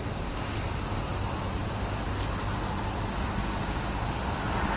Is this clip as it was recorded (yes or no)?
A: yes